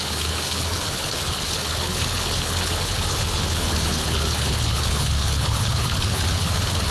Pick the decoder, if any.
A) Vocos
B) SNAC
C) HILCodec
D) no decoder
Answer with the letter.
C